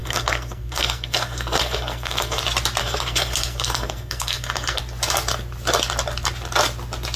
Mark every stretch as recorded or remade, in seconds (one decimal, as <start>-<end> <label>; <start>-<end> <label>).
0.0-2.4 remade; 2.4-2.8 recorded; 2.8-4.8 remade; 4.8-7.2 recorded